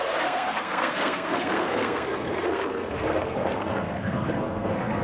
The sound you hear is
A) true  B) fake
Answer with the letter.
B